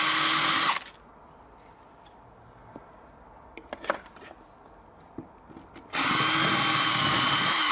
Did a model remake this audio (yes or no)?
no